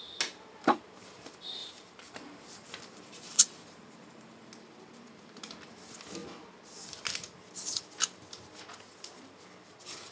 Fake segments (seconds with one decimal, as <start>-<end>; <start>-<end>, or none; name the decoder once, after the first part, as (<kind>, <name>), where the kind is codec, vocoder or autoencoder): 1.6-4.5 (vocoder, BigVGAN v2)